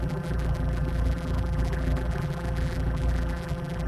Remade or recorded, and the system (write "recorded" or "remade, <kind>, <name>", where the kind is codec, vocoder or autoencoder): remade, vocoder, BigVGAN v2